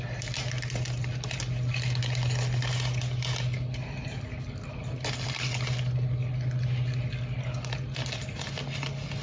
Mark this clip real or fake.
real